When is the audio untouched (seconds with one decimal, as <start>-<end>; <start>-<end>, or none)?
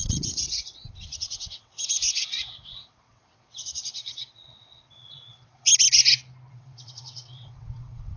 5.7-6.5